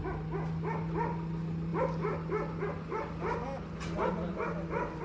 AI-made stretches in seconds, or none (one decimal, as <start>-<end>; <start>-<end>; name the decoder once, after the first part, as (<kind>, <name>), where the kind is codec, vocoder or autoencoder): none